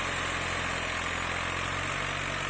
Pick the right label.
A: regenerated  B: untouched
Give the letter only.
B